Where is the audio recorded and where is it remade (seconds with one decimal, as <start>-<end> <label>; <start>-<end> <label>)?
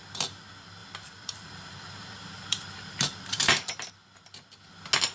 0.0-0.8 recorded; 0.8-3.9 remade; 3.9-5.1 recorded